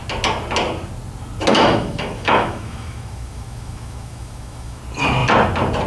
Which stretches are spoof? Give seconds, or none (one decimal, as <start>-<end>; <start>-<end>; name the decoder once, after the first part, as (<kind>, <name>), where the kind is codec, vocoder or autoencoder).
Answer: 1.5-4.8 (autoencoder, DAC-VAE)